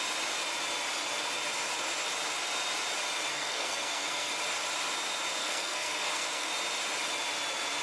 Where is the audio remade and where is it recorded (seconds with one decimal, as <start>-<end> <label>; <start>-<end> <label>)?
0.0-3.3 recorded; 3.3-4.3 remade; 4.3-5.4 recorded; 5.4-6.5 remade; 6.5-7.8 recorded